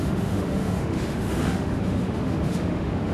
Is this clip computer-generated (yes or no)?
yes